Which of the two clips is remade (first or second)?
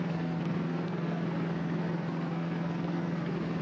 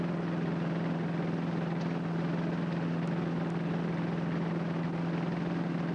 first